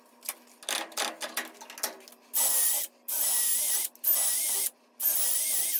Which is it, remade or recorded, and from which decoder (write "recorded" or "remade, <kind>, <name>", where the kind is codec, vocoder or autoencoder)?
recorded